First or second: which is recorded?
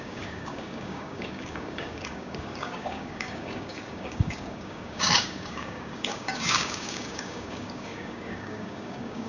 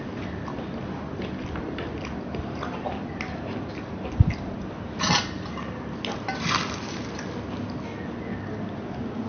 second